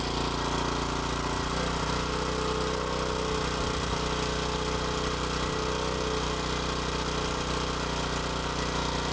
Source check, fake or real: real